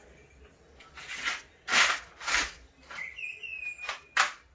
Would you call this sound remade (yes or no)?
no